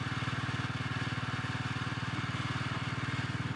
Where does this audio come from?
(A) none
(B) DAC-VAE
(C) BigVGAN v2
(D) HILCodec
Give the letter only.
A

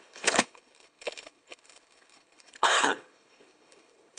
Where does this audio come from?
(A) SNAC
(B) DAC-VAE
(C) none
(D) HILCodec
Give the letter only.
D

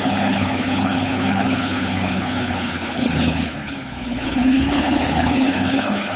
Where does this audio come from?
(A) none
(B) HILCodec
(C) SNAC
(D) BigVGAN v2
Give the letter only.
B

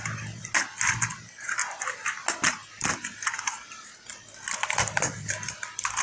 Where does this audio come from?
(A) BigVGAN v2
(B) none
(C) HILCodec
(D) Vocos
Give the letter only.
B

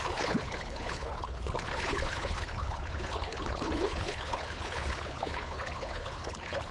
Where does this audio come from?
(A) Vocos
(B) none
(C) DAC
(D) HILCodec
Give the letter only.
D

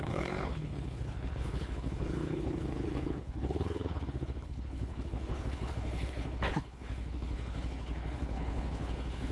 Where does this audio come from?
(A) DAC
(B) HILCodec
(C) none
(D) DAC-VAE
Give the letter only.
B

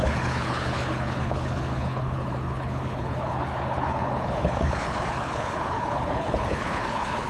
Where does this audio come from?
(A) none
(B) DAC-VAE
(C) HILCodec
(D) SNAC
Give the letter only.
C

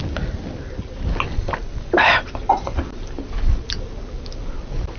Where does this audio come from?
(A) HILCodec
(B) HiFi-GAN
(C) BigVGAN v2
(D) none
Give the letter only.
D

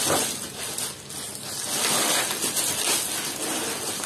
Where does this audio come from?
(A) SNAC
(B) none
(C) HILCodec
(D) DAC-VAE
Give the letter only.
B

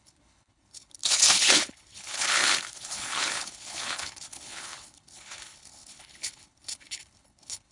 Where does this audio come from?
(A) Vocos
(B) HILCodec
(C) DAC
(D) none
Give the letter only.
B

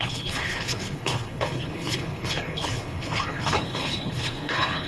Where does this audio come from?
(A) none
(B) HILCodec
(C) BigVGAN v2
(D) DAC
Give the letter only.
B